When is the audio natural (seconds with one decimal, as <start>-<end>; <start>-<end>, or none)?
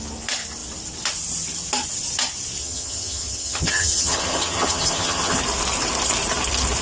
0.0-2.6; 5.4-6.8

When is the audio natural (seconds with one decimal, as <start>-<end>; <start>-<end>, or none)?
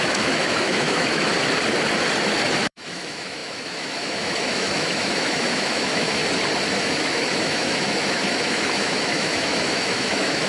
1.3-2.6; 6.2-6.8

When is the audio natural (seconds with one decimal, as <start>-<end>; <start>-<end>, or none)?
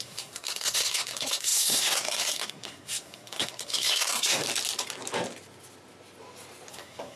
4.4-6.7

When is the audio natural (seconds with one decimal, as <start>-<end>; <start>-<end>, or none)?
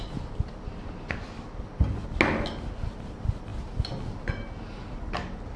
0.0-5.6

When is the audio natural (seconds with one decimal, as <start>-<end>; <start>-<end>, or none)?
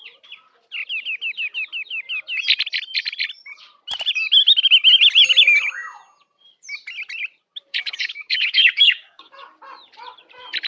0.0-7.7; 9.3-10.7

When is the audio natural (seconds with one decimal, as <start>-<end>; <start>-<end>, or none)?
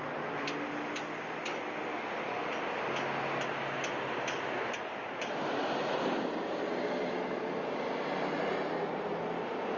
0.0-9.8